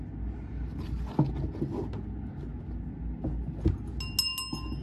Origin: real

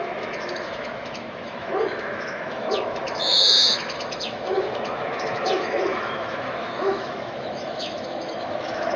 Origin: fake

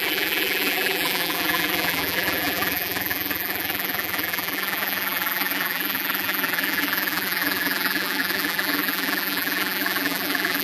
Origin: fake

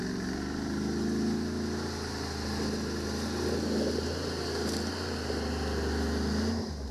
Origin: real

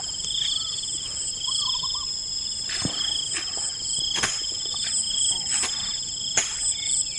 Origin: real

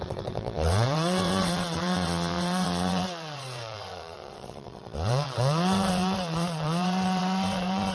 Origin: fake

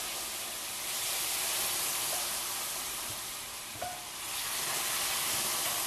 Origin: fake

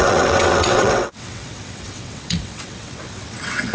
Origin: fake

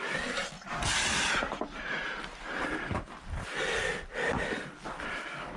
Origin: real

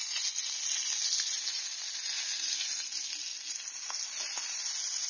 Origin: real